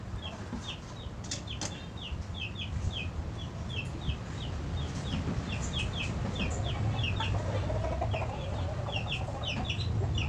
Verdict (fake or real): real